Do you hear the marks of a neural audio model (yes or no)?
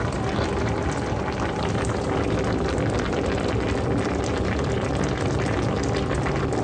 no